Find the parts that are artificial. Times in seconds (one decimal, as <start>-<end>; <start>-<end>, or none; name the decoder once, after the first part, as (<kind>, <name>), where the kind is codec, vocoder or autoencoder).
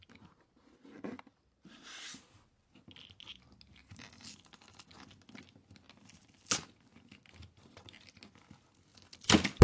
none